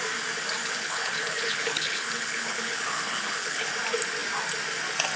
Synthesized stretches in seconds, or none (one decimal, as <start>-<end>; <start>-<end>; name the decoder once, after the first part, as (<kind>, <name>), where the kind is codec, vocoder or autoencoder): 0.6-3.7 (codec, HILCodec)